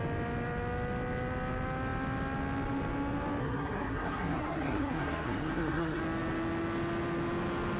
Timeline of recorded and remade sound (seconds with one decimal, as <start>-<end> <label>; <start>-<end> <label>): 0.0-3.4 recorded; 3.4-6.0 remade; 6.0-7.8 recorded